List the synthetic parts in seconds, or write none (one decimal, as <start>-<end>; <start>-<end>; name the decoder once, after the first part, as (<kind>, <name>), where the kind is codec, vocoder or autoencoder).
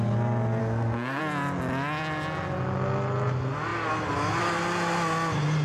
0.6-1.2 (codec, SNAC)